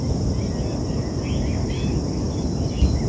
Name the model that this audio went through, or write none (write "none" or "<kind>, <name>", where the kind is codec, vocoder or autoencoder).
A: none